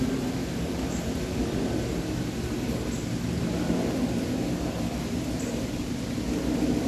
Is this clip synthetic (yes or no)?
no